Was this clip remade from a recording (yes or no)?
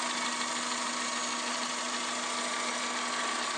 no